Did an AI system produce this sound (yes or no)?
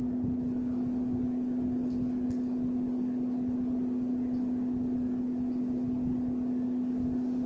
no